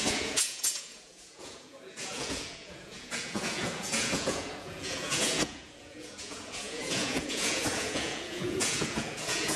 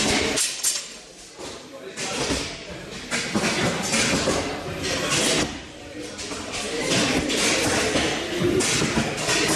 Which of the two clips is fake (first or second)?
first